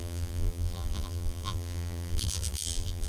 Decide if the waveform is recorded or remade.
remade